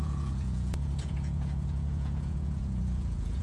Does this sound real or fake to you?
fake